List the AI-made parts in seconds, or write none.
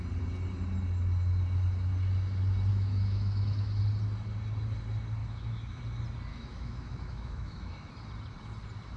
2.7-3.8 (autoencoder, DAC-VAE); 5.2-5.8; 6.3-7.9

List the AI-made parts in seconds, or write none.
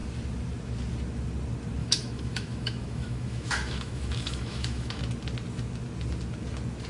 1.8-5.0 (autoencoder, DAC-VAE)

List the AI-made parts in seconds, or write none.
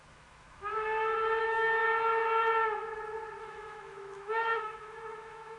0.0-0.7 (autoencoder, DAC-VAE); 1.4-1.8; 3.4-5.6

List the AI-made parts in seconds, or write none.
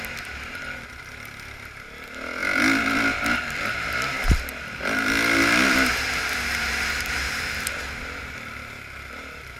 none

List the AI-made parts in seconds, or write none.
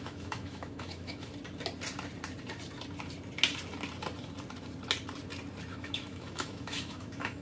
0.0-1.3 (autoencoder, DAC-VAE); 5.7-7.4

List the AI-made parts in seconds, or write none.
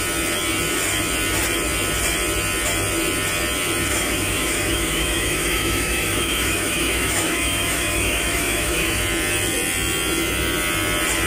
3.9-9.0 (autoencoder, DAC-VAE)